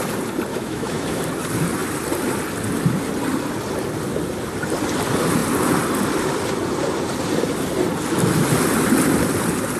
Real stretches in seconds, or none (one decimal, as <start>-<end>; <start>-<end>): 0.0-0.5; 1.2-9.8